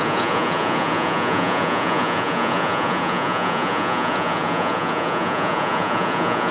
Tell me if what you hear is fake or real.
fake